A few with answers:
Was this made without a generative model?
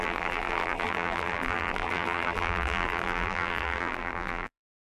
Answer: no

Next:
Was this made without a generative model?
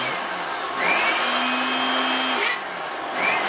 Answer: yes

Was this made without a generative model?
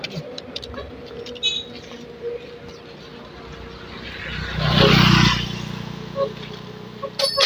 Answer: yes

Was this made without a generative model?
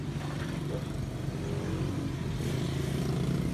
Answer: yes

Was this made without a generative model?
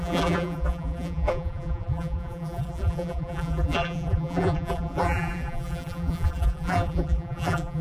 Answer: no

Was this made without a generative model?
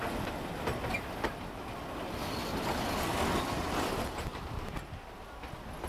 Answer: yes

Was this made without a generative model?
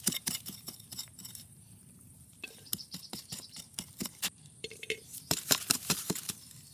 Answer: no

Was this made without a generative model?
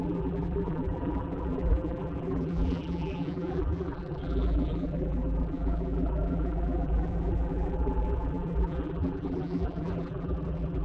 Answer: no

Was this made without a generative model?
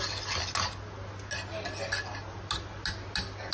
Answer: yes